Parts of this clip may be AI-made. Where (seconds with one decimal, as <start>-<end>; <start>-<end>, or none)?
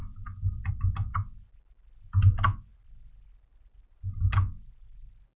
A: none